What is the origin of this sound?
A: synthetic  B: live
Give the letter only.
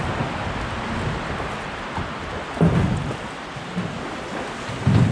B